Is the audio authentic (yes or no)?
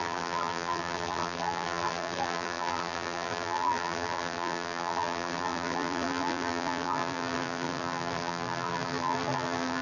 no